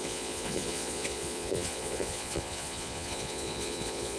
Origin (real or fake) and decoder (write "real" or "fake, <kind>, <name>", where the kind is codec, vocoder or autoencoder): fake, vocoder, Vocos